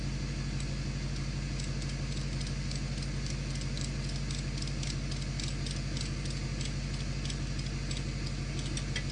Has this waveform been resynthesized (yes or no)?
no